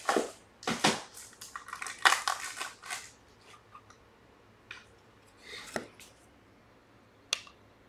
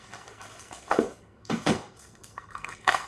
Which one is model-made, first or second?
second